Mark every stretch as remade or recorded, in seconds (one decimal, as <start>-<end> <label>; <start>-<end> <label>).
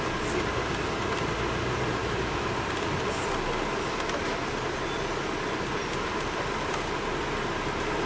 0.0-2.0 recorded; 2.0-2.5 remade; 2.5-8.1 recorded